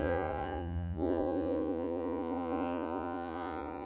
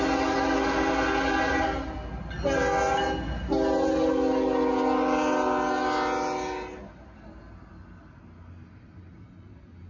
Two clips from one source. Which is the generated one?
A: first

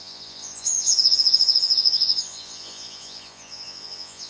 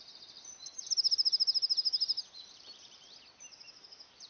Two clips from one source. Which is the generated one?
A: first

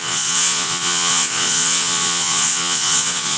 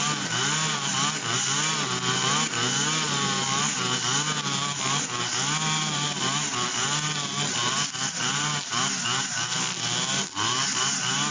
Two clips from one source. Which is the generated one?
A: first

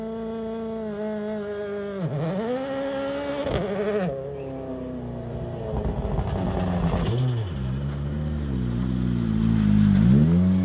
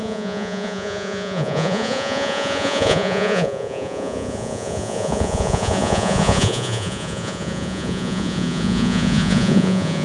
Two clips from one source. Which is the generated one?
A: second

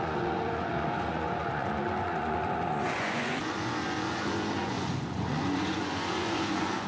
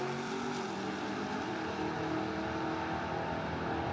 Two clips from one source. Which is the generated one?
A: first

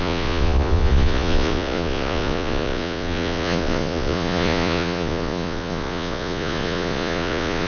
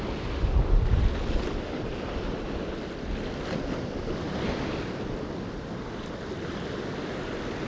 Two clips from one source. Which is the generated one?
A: first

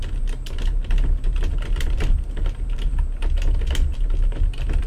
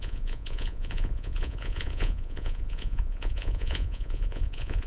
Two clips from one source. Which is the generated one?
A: second